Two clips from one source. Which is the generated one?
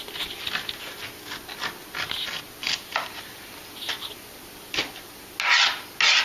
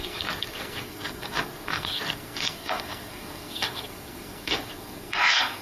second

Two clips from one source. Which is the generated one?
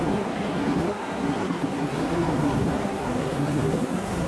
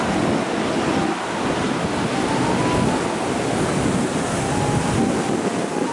first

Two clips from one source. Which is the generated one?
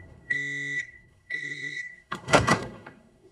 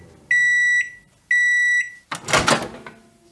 first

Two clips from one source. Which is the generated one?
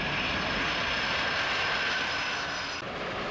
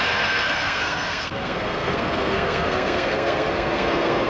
second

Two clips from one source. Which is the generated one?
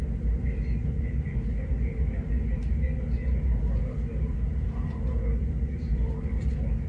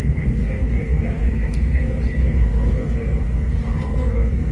second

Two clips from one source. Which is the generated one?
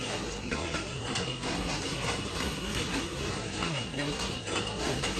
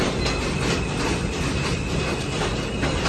first